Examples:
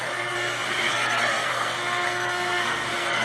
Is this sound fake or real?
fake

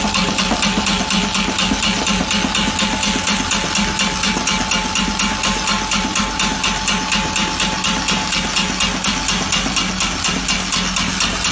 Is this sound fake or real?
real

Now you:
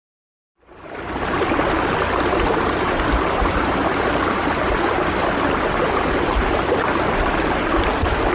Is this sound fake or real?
real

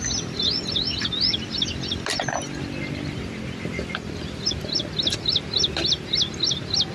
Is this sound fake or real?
real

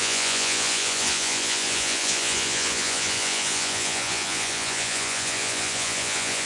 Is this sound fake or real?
fake